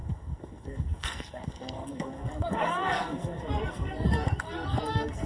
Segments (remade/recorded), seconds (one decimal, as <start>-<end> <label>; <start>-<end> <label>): 0.0-5.3 remade